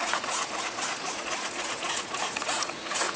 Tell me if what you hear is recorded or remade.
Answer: remade